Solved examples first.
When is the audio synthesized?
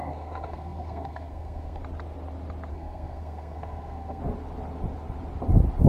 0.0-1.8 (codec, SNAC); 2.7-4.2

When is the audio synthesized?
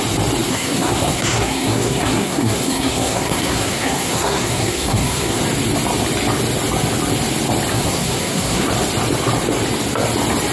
0.5-5.4 (codec, SNAC); 7.7-8.7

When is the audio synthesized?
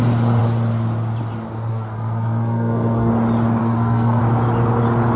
1.7-3.1 (codec, SNAC); 3.6-4.2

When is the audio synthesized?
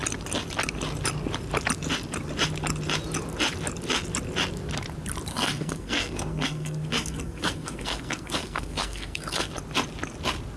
5.3-9.5 (codec, SNAC)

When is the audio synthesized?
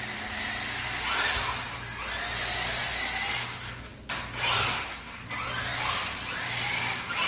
4.7-5.2 (codec, SNAC)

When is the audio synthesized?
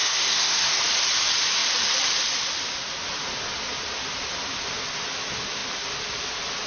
0.0-0.8 (codec, SNAC)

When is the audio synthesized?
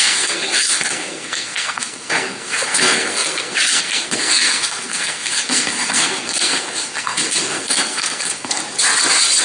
0.0-8.6 (codec, SNAC)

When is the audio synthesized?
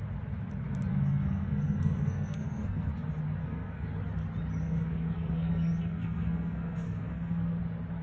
0.9-2.9 (codec, SNAC); 3.4-3.9; 4.6-7.6